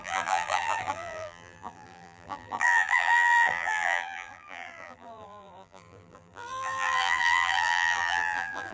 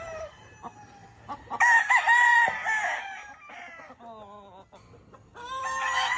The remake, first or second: first